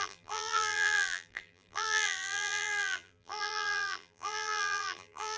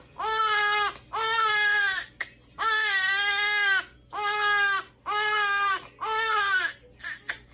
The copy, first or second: first